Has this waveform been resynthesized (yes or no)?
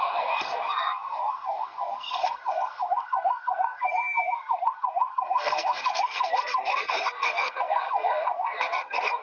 yes